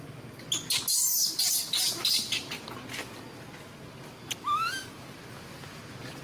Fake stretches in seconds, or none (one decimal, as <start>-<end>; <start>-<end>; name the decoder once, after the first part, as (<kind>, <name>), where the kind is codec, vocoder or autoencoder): none